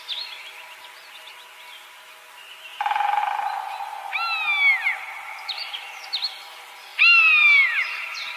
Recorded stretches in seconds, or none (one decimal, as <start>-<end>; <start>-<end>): 0.0-6.9